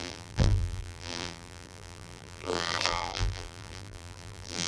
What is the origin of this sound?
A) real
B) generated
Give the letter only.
B